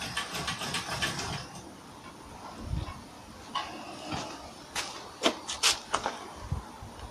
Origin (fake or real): real